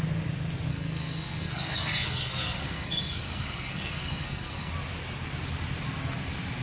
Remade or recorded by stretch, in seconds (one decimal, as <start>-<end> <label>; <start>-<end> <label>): 0.0-0.7 recorded; 0.7-4.7 remade; 4.7-6.6 recorded